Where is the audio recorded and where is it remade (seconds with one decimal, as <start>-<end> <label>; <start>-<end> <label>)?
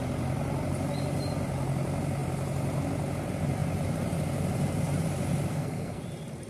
0.0-5.5 recorded; 5.5-6.0 remade; 6.0-6.5 recorded